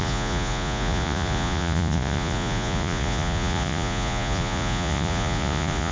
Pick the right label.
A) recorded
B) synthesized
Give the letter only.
B